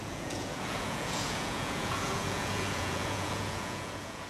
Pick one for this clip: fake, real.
fake